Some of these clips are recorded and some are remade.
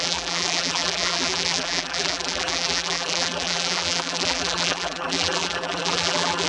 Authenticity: remade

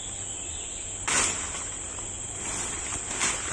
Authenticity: remade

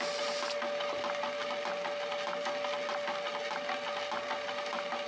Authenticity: recorded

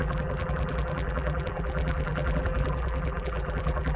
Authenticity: remade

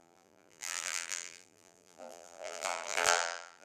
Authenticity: remade